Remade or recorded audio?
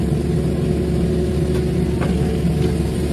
recorded